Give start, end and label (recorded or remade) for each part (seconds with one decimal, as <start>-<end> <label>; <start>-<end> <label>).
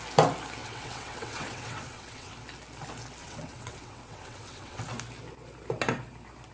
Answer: 0.0-0.6 recorded; 0.6-2.3 remade; 2.3-3.2 recorded; 3.2-4.8 remade; 4.8-6.5 recorded